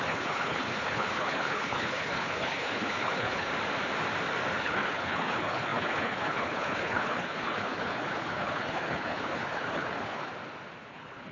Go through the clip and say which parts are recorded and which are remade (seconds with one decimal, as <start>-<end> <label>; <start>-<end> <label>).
0.0-3.5 remade; 3.5-4.6 recorded; 4.6-10.3 remade; 10.3-10.9 recorded; 10.9-11.3 remade